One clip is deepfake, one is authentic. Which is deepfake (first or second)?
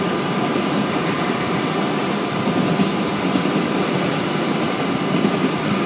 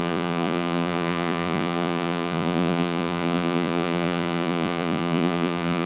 second